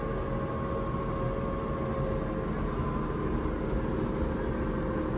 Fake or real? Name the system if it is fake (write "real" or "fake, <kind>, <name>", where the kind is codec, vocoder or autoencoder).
real